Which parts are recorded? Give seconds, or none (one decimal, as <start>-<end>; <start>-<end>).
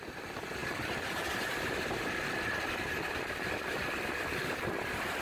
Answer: 0.0-5.2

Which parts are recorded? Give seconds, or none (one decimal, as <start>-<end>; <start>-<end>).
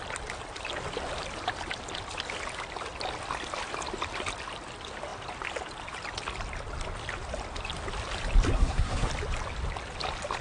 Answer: 0.0-8.5; 9.1-10.4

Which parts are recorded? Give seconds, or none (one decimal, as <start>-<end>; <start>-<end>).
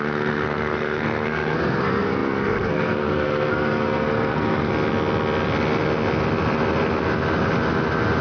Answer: 4.7-8.2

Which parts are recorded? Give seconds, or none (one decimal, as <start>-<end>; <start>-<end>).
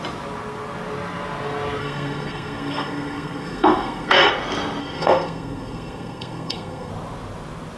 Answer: 0.0-1.8; 4.3-4.8; 6.9-7.8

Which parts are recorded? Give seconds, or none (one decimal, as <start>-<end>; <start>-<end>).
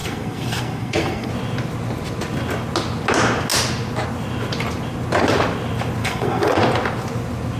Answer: 1.3-6.0; 6.6-7.6